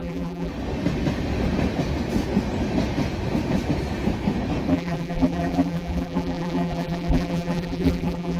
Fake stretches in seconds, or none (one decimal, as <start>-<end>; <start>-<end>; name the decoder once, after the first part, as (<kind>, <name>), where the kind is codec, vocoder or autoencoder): 0.0-0.5 (vocoder, BigVGAN v2); 4.7-8.4